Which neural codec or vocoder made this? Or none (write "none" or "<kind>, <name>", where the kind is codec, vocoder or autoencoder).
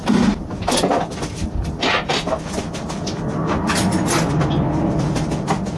none